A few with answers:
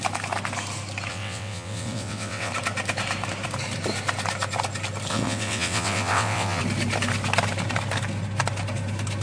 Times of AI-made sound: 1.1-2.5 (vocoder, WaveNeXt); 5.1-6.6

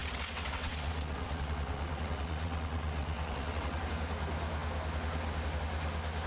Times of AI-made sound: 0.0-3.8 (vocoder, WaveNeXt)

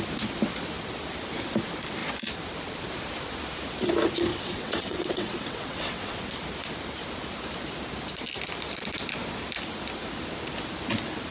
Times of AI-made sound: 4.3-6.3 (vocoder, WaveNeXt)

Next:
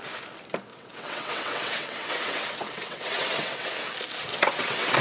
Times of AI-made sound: 0.7-3.7 (vocoder, WaveNeXt); 4.3-5.0

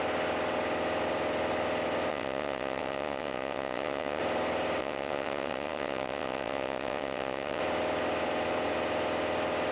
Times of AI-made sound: 2.1-4.2 (vocoder, WaveNeXt); 4.8-7.6